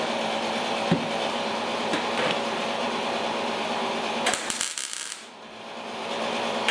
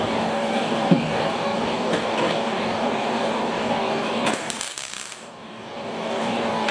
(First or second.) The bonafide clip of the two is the first